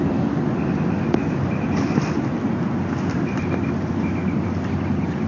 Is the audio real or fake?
real